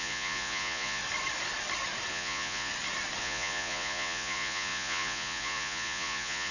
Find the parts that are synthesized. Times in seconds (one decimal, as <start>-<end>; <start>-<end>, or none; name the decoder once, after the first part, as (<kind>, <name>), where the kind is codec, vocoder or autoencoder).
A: 0.0-1.0 (vocoder, Vocos); 2.1-2.7; 3.2-6.5